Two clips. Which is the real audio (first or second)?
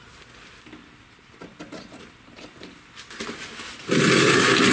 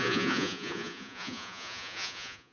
first